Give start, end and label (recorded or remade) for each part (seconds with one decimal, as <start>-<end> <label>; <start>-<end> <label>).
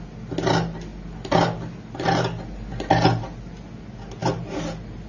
0.0-5.1 recorded